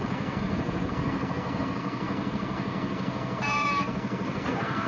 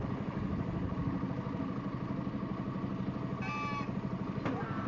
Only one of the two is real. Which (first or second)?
second